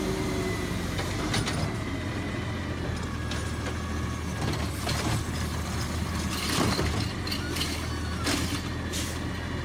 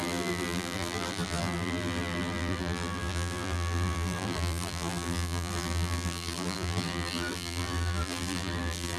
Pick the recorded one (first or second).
first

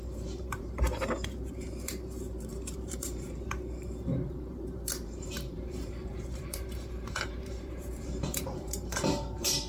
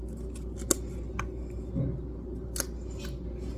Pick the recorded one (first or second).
second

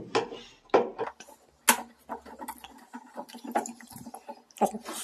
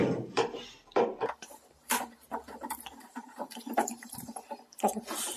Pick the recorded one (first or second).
first